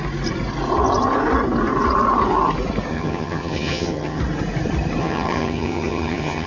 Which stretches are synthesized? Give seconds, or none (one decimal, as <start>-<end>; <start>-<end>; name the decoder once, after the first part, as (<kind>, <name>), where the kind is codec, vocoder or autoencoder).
2.9-4.2 (vocoder, HiFi-GAN); 5.0-6.5

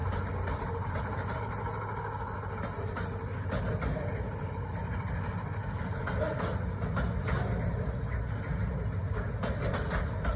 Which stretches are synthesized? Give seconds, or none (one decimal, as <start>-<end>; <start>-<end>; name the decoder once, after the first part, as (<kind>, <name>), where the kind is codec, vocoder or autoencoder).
none

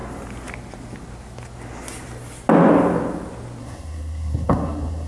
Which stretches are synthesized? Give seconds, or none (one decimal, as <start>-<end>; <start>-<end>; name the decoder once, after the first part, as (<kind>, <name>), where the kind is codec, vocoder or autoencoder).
3.6-5.1 (codec, SNAC)

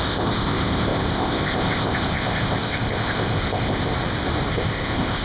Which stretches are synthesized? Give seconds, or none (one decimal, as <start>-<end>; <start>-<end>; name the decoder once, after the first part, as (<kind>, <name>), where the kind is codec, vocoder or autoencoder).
0.0-3.9 (codec, ZipCodec); 4.5-5.2

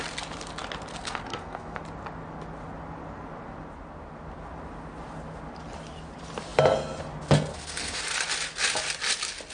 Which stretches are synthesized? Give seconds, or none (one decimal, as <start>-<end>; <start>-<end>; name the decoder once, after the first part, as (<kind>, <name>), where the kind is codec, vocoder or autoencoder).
0.9-1.8 (codec, SNAC); 7.5-8.0